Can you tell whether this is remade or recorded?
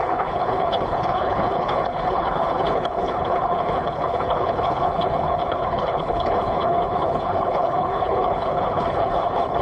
remade